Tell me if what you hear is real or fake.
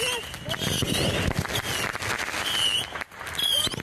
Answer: real